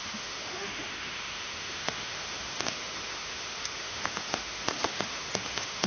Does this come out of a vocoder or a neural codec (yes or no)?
yes